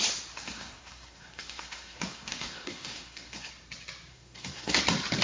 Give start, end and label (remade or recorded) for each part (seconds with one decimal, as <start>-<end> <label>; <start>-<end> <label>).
0.0-0.4 recorded; 0.4-3.5 remade; 3.5-4.1 recorded; 4.1-4.8 remade; 4.8-5.2 recorded